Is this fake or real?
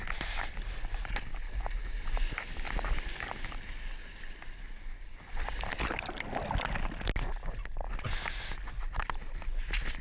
real